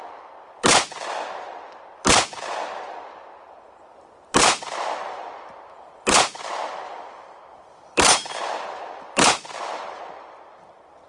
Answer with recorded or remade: remade